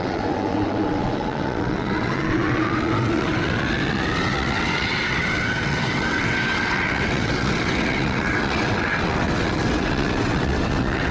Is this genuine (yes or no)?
no